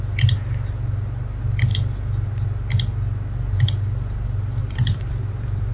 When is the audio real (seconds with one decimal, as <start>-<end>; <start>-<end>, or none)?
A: 0.0-4.6